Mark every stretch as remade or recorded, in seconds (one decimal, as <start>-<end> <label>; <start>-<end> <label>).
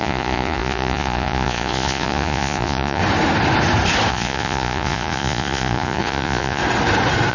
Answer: 0.0-3.0 remade; 3.0-4.1 recorded; 4.1-6.6 remade; 6.6-7.3 recorded